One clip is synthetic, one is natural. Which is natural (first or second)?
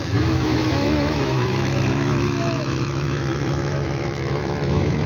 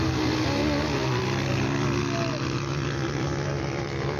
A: second